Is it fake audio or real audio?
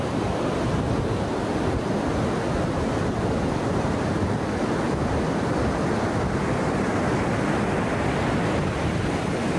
real